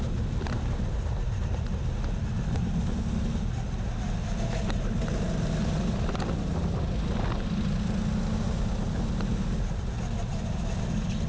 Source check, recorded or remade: recorded